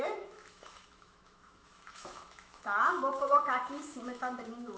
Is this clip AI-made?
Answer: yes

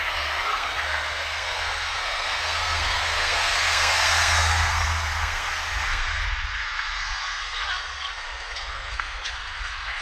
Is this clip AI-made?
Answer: yes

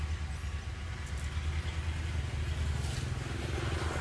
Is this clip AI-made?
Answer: no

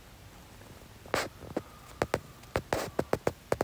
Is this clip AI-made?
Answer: no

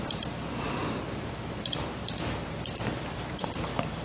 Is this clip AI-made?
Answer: yes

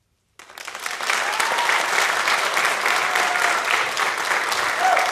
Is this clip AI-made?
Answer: no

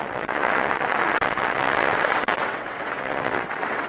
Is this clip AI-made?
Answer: yes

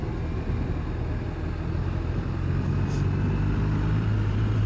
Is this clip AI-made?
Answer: no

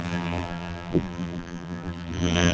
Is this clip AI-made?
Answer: yes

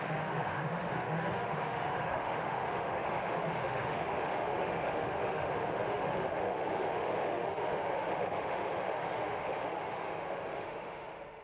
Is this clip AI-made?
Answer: yes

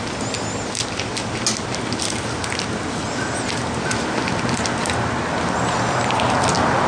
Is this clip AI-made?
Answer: no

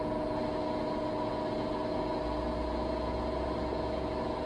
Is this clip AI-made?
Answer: no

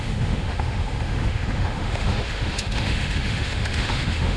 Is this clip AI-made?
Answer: yes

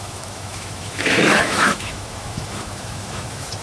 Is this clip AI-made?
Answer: yes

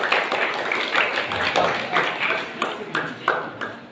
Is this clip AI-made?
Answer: no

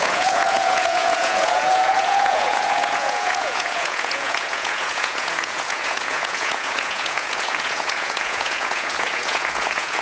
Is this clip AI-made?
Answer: yes